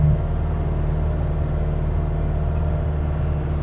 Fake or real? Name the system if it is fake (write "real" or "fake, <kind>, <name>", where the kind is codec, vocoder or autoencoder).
real